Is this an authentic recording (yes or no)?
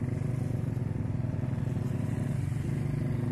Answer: yes